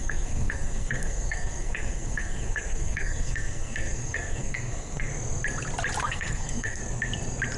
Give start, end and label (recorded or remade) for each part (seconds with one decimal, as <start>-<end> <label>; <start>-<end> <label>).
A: 0.0-5.1 remade; 5.1-6.0 recorded; 6.0-6.8 remade; 6.8-7.6 recorded